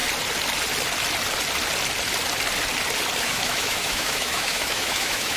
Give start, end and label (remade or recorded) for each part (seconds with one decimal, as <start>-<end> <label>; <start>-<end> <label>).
0.0-3.2 recorded; 3.2-5.4 remade

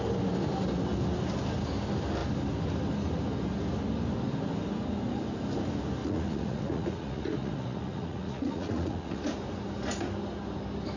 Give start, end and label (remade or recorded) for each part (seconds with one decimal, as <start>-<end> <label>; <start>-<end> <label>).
0.0-6.0 recorded; 6.0-9.2 remade; 9.2-11.0 recorded

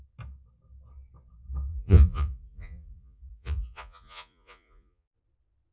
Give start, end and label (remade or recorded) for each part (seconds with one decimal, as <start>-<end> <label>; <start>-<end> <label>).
0.0-1.7 recorded; 1.7-5.1 remade; 5.1-5.7 recorded